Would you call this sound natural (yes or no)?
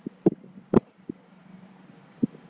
yes